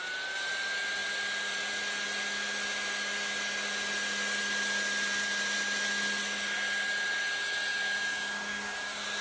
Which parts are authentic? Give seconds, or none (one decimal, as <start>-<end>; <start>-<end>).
0.0-8.0